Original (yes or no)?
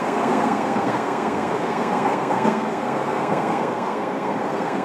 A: no